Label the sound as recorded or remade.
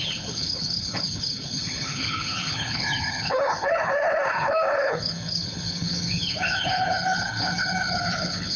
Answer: remade